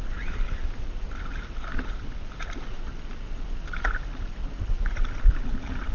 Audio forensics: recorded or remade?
remade